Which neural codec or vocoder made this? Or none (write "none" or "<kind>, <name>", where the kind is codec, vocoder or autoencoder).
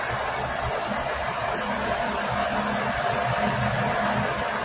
none